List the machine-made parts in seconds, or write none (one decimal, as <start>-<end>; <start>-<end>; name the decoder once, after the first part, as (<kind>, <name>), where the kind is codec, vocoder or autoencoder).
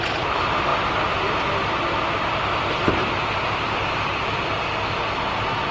0.0-0.7 (vocoder, BigVGAN v2); 3.5-4.1